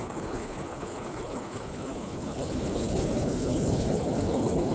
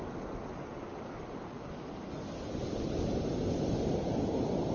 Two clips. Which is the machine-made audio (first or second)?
first